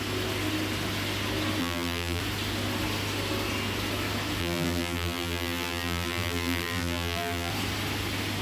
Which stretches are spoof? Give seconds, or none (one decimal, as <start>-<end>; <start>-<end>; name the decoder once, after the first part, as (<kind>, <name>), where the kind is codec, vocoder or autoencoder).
1.6-2.2 (vocoder, BigVGAN v2); 4.4-7.5